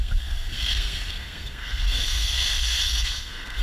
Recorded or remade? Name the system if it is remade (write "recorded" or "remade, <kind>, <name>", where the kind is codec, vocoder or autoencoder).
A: remade, codec, SNAC